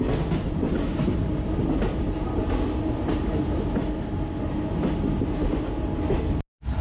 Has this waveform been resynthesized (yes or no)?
no